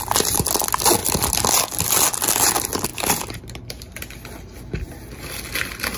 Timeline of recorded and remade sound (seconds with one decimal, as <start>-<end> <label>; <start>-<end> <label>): 0.0-6.0 recorded